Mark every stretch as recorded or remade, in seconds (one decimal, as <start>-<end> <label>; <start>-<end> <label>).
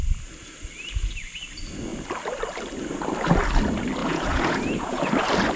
0.0-4.0 recorded; 4.0-5.1 remade; 5.1-5.6 recorded